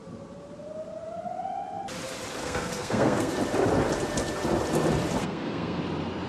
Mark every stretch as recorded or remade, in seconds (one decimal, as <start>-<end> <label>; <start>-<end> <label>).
0.0-2.4 recorded; 2.4-3.3 remade; 3.3-5.2 recorded; 5.2-5.8 remade; 5.8-6.3 recorded

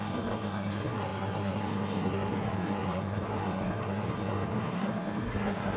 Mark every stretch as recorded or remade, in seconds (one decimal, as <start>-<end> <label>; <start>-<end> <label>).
0.0-5.8 remade

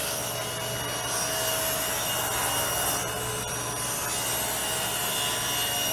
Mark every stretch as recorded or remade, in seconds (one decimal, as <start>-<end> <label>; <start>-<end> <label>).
0.0-5.9 recorded

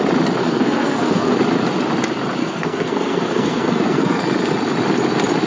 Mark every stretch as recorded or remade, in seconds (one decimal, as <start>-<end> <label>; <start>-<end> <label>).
0.0-0.4 recorded; 0.4-1.3 remade; 1.3-2.4 recorded; 2.4-4.2 remade; 4.2-5.5 recorded

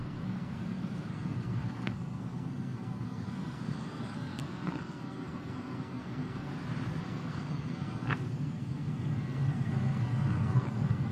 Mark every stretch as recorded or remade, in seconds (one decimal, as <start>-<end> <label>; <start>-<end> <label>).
0.0-6.5 remade; 6.5-7.0 recorded; 7.0-11.1 remade

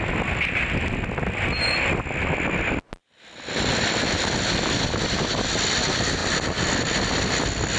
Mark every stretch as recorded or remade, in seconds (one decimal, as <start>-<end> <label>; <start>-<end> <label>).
0.0-7.8 recorded

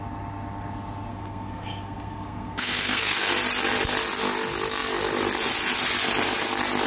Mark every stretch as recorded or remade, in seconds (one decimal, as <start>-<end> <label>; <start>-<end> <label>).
0.0-1.1 recorded; 1.1-3.3 remade; 3.3-6.9 recorded